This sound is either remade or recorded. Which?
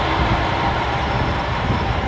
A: remade